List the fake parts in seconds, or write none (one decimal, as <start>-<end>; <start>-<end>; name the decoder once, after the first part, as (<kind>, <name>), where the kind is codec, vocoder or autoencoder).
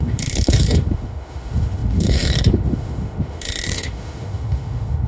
0.0-5.1 (autoencoder, DAC-VAE)